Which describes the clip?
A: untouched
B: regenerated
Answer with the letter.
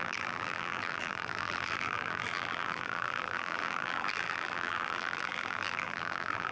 B